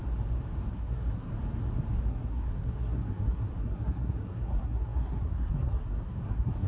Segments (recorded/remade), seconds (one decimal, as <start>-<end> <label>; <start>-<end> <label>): 0.0-0.7 recorded; 0.7-1.3 remade; 1.3-2.1 recorded; 2.1-6.7 remade